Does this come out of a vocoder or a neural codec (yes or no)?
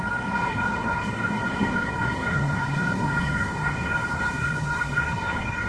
yes